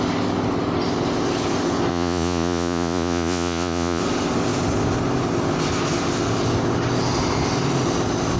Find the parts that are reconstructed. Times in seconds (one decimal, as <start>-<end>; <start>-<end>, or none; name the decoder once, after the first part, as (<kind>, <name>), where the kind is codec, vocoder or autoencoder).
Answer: 1.9-4.0 (vocoder, Vocos)